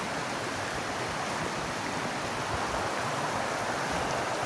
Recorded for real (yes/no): yes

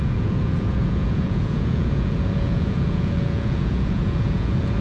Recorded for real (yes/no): no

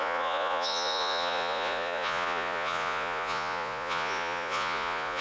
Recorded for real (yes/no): no